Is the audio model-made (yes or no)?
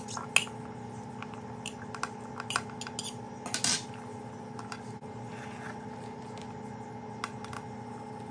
no